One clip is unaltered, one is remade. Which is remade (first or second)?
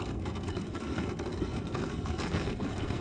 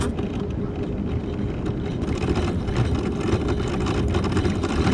first